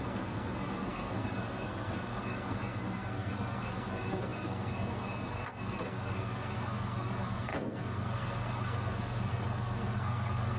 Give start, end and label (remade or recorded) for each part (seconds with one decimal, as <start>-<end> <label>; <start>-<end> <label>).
0.0-10.6 remade